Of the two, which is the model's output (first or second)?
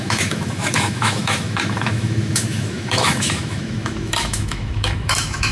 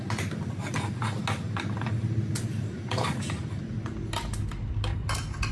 first